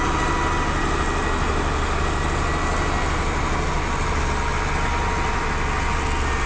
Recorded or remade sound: recorded